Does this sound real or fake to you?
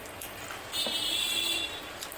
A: real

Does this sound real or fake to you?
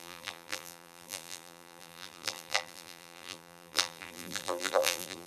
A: fake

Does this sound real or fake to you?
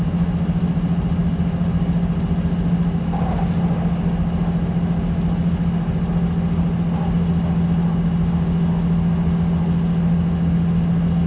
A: real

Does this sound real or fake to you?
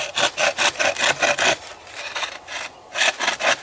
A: real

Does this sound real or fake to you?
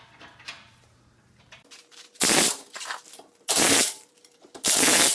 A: fake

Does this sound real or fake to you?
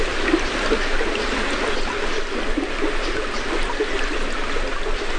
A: real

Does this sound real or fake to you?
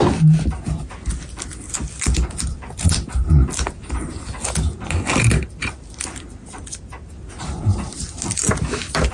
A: real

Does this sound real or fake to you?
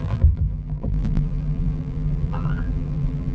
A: fake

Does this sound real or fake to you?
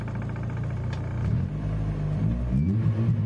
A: real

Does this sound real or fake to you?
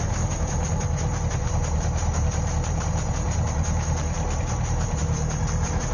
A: fake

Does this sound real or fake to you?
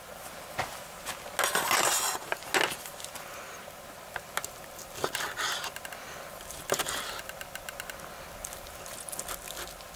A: real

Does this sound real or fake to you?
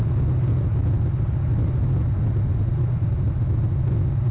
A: real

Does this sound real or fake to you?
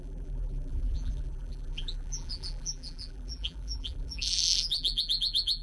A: fake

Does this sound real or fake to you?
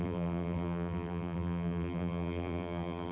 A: fake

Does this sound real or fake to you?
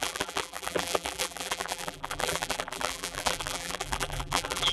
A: fake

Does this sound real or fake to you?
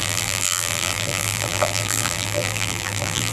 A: fake